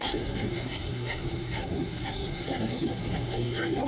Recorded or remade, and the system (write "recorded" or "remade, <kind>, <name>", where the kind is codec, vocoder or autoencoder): remade, codec, SNAC